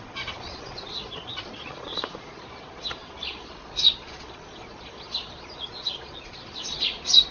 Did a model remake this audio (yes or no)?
yes